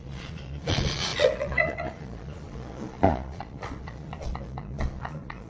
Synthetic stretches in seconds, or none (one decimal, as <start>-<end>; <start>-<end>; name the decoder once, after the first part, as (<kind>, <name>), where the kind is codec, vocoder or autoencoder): 0.0-5.5 (vocoder, Vocos)